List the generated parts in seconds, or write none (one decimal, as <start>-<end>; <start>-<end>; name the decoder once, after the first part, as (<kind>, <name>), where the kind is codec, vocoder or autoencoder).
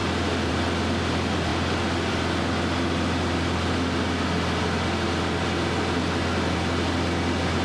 none